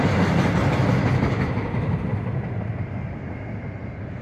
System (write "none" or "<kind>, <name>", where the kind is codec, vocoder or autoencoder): none